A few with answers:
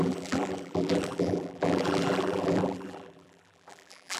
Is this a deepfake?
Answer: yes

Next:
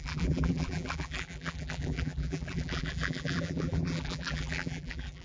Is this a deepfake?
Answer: yes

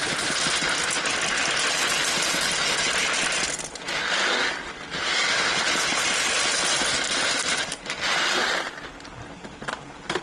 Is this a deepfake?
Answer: no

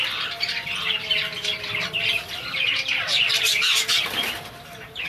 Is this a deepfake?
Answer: yes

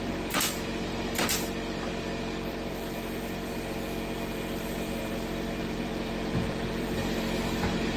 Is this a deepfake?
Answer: yes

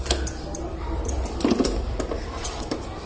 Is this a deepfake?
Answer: yes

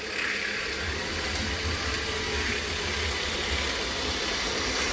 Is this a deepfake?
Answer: no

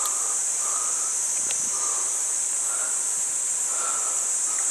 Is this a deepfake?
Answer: no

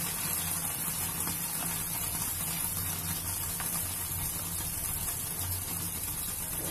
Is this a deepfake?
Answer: no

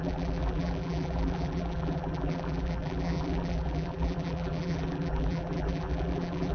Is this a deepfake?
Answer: yes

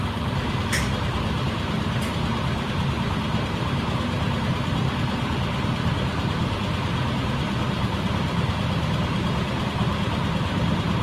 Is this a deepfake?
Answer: yes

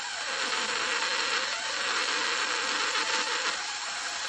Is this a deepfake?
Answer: no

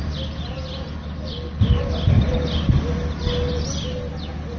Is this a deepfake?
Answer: no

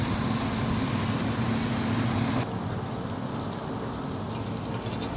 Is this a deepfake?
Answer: no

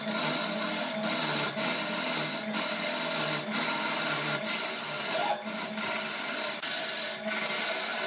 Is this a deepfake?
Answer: no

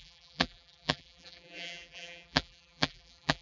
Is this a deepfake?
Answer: yes